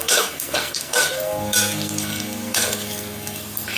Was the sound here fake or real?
fake